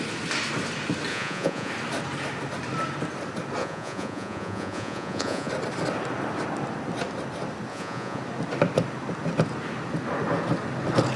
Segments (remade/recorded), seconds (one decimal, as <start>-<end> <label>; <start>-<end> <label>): 0.0-1.1 recorded; 1.1-1.7 remade; 1.7-3.6 recorded; 3.6-5.5 remade; 5.5-7.7 recorded; 7.7-8.2 remade; 8.2-11.2 recorded